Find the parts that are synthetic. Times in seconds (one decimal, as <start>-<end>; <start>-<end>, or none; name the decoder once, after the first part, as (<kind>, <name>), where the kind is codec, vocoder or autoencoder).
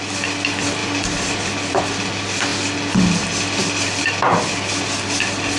0.8-1.8 (vocoder, BigVGAN v2)